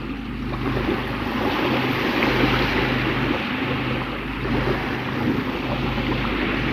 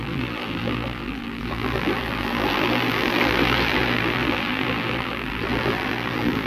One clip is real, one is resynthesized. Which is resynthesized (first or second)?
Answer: second